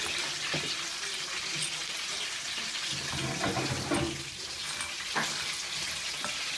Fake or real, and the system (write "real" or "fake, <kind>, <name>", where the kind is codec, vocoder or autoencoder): real